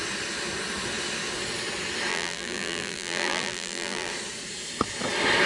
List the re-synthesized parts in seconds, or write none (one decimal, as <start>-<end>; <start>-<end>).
2.1-4.1